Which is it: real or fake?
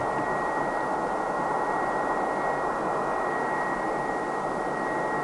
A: real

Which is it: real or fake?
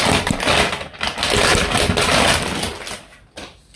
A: real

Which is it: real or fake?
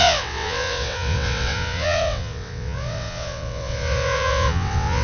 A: fake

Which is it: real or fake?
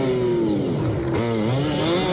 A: real